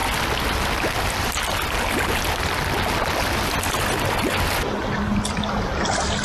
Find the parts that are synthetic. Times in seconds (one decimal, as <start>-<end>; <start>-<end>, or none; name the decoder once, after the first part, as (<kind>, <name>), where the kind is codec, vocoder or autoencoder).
none